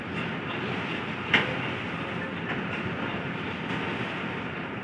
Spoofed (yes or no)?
no